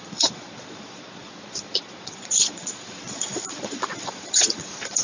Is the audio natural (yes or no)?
no